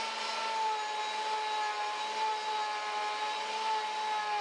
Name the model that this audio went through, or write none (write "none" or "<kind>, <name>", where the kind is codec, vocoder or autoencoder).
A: none